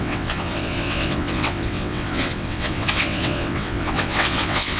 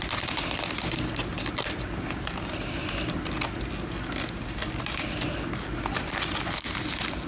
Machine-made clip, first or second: first